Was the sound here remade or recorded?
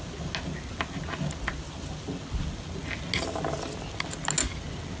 recorded